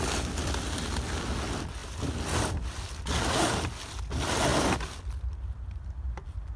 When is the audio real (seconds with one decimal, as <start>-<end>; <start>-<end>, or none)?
0.0-6.6